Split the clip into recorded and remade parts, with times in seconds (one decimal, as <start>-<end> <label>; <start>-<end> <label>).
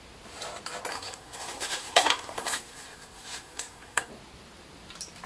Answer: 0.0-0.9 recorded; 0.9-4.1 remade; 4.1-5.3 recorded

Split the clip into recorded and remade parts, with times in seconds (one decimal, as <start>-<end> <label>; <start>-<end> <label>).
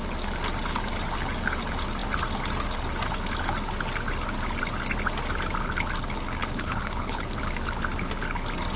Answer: 0.0-6.4 recorded; 6.4-7.4 remade; 7.4-8.8 recorded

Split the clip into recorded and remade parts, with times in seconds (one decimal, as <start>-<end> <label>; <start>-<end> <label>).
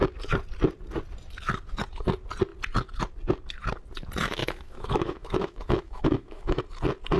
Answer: 0.0-4.4 recorded; 4.4-6.6 remade; 6.6-7.2 recorded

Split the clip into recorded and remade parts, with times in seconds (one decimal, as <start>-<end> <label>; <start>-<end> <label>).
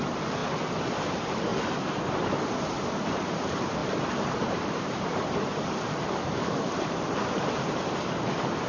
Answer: 0.0-0.4 remade; 0.4-1.1 recorded; 1.1-1.5 remade; 1.5-2.6 recorded; 2.6-8.7 remade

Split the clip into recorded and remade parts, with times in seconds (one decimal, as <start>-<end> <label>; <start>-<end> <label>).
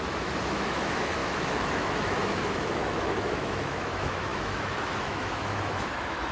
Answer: 0.0-6.3 remade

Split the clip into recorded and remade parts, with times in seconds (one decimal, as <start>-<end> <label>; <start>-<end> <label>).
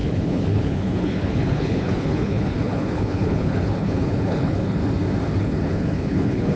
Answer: 0.0-4.8 remade; 4.8-5.4 recorded; 5.4-6.6 remade